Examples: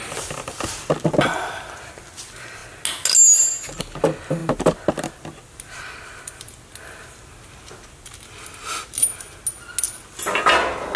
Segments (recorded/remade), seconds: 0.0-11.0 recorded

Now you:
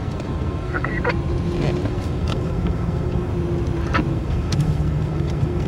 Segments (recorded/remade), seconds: 0.0-0.9 remade; 0.9-1.9 recorded; 1.9-3.3 remade; 3.3-4.1 recorded; 4.1-5.7 remade

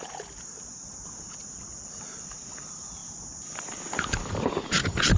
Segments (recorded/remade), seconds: 0.0-5.2 recorded

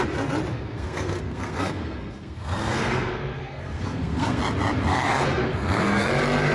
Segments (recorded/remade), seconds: 0.0-0.5 recorded; 0.5-4.4 remade; 4.4-4.9 recorded; 4.9-6.1 remade; 6.1-6.5 recorded

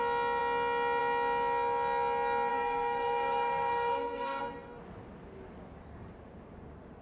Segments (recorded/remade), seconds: 0.0-2.5 recorded; 2.5-4.4 remade; 4.4-7.0 recorded

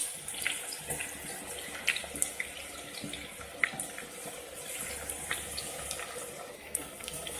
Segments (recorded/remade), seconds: 0.0-6.5 recorded; 6.5-7.4 remade

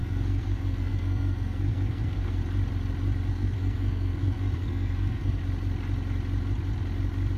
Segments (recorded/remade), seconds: 0.0-2.4 remade; 2.4-3.3 recorded; 3.3-5.4 remade; 5.4-7.4 recorded